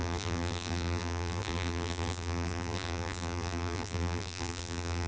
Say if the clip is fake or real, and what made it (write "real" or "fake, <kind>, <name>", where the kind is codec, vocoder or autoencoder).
fake, vocoder, BigVGAN v2